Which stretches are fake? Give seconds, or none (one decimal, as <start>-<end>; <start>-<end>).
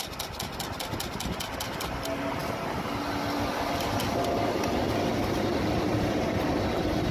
none